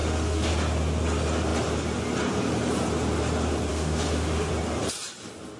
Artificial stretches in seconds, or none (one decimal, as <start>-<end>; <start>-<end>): 0.0-0.5; 3.7-4.5

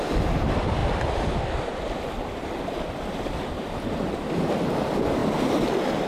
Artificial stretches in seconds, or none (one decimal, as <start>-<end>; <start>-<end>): none

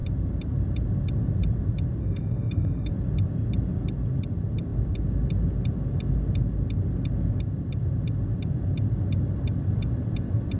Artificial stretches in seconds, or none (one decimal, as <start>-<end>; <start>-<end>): 2.0-2.9

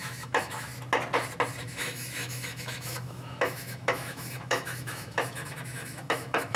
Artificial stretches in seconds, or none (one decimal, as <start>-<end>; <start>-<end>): 0.0-0.7; 1.6-6.6